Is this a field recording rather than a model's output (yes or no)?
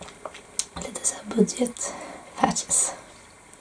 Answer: yes